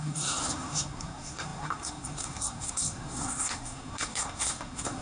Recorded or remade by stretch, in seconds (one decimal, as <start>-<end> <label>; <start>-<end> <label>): 0.0-5.0 remade